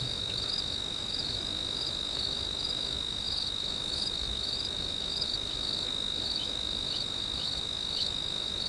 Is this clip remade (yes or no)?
yes